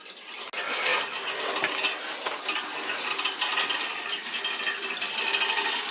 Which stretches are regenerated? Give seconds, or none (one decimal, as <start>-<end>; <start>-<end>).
none